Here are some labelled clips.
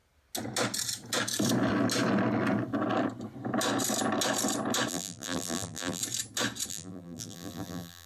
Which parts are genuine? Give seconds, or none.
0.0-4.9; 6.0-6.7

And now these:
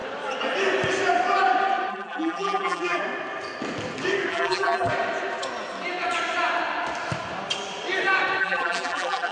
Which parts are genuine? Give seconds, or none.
0.0-1.9; 3.0-4.3; 4.9-8.4

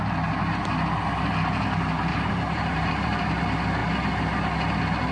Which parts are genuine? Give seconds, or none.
0.0-2.1; 3.4-5.1

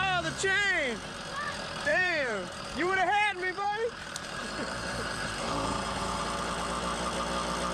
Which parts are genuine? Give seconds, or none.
0.0-1.9; 6.2-7.7

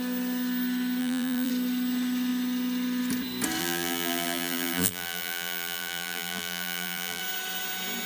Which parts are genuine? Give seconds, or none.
0.0-1.0; 1.5-3.6; 7.2-8.1